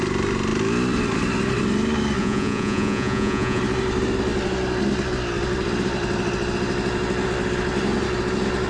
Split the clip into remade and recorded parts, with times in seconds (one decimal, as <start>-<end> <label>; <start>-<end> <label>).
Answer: 0.0-2.2 recorded; 2.2-3.6 remade; 3.6-8.7 recorded